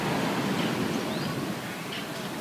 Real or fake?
real